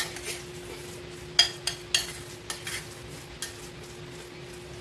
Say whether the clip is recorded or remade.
recorded